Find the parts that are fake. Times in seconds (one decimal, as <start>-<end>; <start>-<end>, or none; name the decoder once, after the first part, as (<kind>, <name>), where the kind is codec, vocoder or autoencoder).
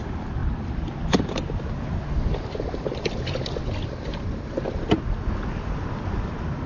none